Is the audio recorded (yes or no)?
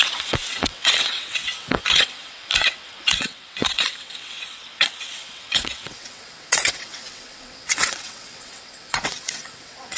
no